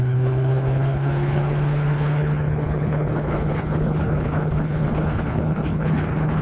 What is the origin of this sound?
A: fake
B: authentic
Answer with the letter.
A